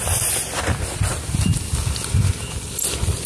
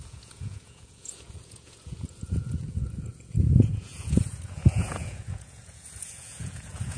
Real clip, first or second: first